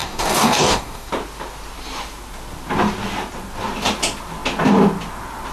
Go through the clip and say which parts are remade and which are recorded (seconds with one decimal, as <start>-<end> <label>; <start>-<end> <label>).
0.0-1.1 remade; 1.1-5.5 recorded